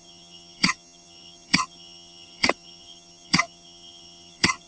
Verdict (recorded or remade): remade